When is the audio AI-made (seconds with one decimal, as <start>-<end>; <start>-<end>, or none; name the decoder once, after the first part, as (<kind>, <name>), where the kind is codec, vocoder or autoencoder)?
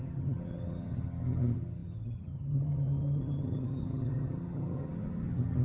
0.0-5.6 (vocoder, HiFi-GAN)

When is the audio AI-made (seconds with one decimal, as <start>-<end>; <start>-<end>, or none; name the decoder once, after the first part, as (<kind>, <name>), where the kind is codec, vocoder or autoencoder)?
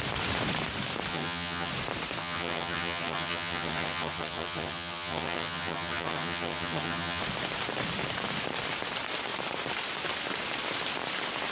1.1-1.7 (vocoder, HiFi-GAN); 2.2-7.2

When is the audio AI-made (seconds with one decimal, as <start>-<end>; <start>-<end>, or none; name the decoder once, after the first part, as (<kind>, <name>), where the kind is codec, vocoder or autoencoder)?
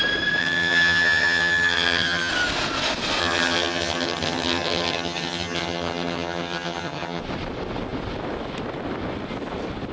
0.4-2.3 (vocoder, HiFi-GAN); 3.2-7.2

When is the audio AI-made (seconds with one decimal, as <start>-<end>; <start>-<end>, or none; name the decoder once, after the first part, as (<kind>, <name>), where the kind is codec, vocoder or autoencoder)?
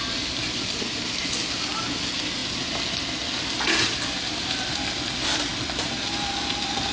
none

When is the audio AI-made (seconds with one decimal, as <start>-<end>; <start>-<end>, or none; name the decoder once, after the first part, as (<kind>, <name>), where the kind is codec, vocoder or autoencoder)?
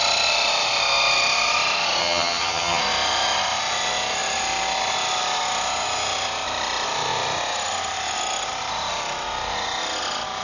2.0-2.8 (vocoder, HiFi-GAN)